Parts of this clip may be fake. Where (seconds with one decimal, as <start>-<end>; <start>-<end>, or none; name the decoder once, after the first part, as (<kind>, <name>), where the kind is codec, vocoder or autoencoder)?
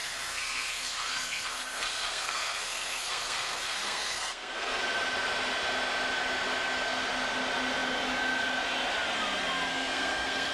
0.0-4.8 (codec, SNAC); 9.7-10.5